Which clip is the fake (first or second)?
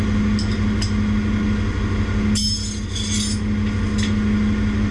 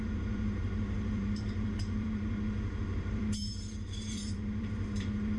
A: second